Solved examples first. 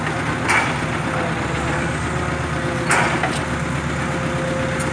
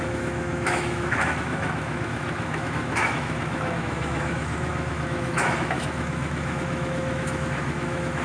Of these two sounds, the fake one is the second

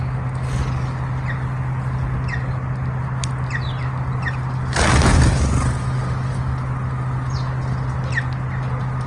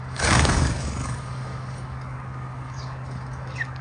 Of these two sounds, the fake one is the second